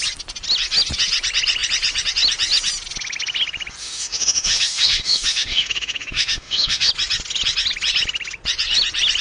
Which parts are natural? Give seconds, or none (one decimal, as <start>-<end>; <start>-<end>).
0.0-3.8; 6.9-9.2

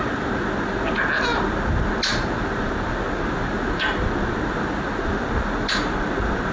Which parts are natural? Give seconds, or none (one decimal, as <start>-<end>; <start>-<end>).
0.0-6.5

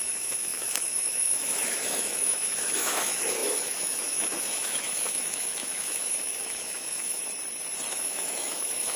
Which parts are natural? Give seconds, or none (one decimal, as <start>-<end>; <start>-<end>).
7.2-7.9

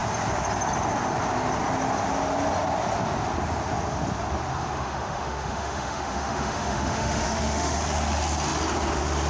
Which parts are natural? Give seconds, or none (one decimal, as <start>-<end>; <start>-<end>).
0.0-4.5; 7.8-9.3

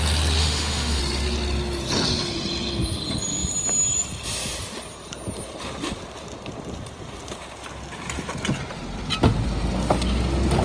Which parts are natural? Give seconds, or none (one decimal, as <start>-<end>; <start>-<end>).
0.0-0.4; 1.0-10.6

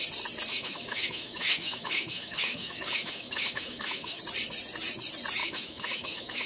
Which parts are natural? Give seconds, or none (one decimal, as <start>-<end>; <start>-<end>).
0.0-0.5; 4.2-5.4

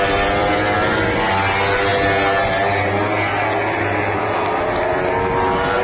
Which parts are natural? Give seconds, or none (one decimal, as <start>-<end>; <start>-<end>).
0.0-5.8